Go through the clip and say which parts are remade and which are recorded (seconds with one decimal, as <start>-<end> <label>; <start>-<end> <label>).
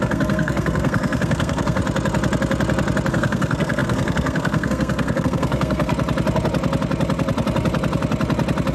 0.0-1.8 remade; 1.8-3.1 recorded; 3.1-5.9 remade; 5.9-8.7 recorded